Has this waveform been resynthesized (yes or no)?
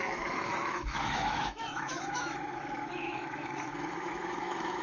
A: yes